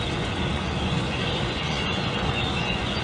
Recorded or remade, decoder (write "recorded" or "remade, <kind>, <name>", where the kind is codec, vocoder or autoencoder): remade, vocoder, Vocos